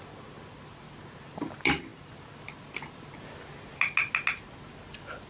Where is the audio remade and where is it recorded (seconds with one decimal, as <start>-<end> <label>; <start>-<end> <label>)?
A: 0.0-5.3 recorded